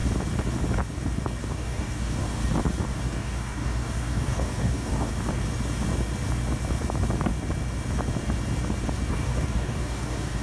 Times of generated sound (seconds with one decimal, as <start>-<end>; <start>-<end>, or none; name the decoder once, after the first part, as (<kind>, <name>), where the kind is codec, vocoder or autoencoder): 1.4-2.4 (codec, DAC); 2.9-5.1; 9.1-10.4